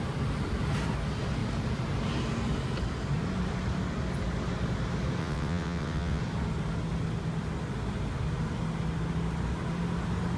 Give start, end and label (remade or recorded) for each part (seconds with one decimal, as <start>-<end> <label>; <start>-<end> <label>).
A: 0.0-5.2 recorded; 5.2-6.2 remade; 6.2-10.4 recorded